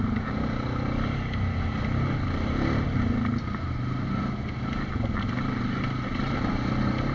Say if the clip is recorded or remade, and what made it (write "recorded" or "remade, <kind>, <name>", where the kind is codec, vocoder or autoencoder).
recorded